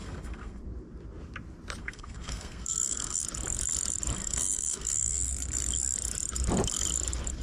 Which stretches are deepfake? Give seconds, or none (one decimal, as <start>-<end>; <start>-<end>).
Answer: 0.0-0.6; 1.8-3.2; 4.2-5.3